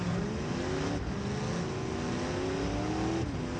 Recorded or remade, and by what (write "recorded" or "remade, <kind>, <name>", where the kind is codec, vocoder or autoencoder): recorded